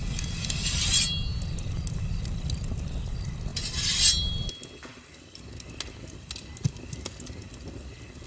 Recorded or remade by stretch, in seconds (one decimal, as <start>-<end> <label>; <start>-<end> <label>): 0.0-8.3 recorded